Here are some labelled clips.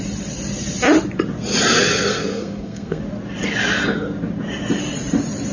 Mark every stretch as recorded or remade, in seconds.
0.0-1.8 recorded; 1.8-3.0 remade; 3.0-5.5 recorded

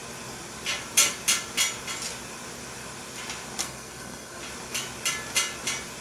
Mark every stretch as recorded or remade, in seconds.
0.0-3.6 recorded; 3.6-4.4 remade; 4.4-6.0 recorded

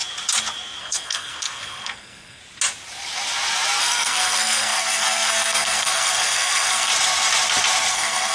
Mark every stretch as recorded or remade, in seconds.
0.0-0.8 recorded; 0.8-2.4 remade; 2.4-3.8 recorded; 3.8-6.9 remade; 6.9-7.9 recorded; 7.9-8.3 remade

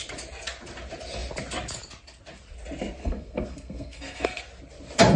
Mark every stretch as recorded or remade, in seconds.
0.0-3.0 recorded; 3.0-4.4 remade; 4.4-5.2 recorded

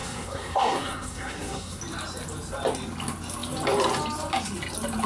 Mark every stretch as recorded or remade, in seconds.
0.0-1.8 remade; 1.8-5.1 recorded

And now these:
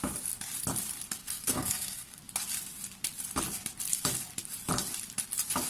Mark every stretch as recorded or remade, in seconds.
0.0-1.2 recorded; 1.2-2.2 remade; 2.2-5.7 recorded